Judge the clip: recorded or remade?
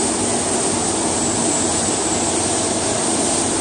recorded